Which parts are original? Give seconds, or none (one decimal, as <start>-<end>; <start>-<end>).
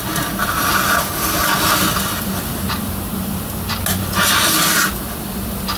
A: 0.0-5.8